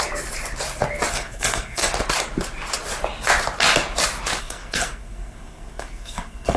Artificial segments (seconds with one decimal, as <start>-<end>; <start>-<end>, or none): 1.1-1.9; 4.4-6.6

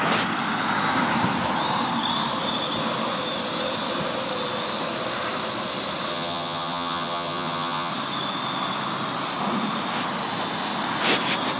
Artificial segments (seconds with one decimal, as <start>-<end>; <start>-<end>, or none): 6.1-7.9

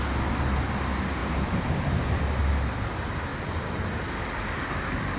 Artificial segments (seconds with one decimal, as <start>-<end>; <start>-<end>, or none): 1.2-1.8; 3.3-4.0

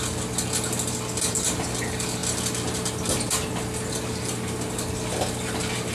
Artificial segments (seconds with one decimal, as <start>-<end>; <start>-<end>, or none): none

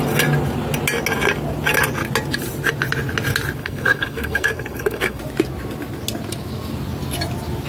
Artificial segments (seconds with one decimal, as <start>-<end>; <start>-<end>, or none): 3.6-5.2

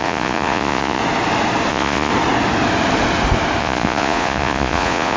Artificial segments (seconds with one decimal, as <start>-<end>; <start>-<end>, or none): 0.0-1.0; 1.7-2.1; 3.6-5.2